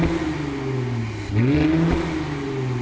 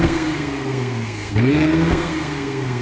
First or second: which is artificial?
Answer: second